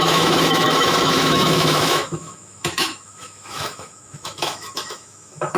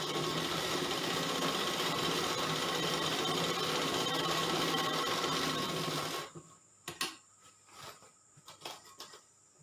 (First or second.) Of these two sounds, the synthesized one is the first